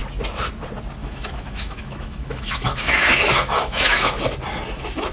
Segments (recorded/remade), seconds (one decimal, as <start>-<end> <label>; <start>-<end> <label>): 0.0-1.0 recorded; 1.0-4.1 remade; 4.1-5.1 recorded